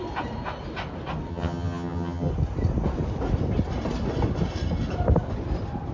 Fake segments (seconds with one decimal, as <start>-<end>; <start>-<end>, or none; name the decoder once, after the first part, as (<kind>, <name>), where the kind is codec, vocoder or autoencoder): 1.3-2.3 (vocoder, HiFi-GAN)

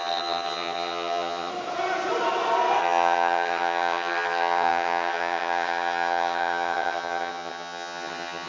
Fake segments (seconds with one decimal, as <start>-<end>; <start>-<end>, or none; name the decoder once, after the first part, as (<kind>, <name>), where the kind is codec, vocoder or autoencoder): 0.0-1.5 (vocoder, HiFi-GAN); 2.8-8.5

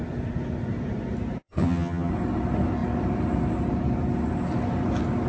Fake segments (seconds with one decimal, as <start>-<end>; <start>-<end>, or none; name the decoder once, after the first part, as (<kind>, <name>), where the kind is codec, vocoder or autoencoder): 1.5-2.1 (vocoder, HiFi-GAN)

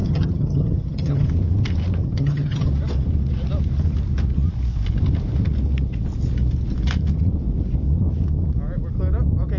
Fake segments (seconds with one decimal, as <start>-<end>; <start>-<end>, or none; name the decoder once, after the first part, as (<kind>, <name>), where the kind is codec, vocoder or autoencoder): 0.0-1.3 (vocoder, HiFi-GAN); 2.0-2.7